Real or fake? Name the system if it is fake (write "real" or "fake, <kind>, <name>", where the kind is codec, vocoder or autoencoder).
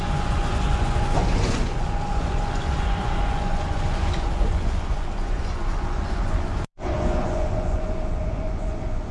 fake, vocoder, Vocos